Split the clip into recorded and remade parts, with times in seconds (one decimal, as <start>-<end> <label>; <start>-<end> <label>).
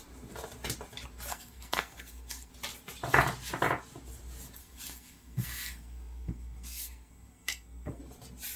0.0-1.3 recorded; 1.3-2.5 remade; 2.5-4.6 recorded; 4.6-8.0 remade; 8.0-8.6 recorded